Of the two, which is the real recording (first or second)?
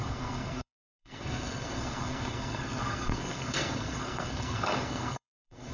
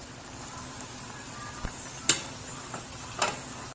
second